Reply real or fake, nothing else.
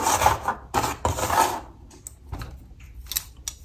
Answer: real